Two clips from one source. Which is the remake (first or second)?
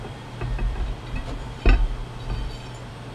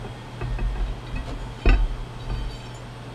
first